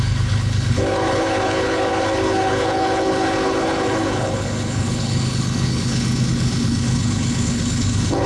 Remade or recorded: remade